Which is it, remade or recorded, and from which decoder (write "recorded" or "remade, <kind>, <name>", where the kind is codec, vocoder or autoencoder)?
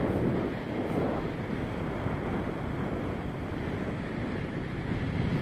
recorded